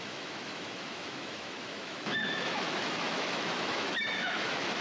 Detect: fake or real fake